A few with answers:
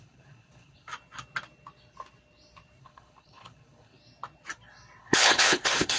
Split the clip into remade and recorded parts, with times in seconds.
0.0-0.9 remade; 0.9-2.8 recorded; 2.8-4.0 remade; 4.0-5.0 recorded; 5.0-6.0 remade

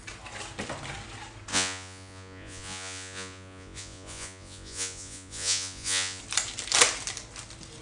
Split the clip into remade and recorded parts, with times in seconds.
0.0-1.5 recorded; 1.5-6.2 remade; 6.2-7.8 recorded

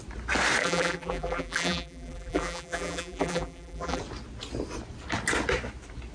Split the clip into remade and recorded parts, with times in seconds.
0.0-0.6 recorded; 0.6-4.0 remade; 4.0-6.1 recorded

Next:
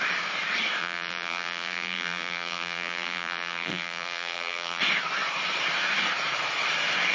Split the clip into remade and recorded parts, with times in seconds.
0.0-0.8 recorded; 0.8-4.8 remade; 4.8-7.1 recorded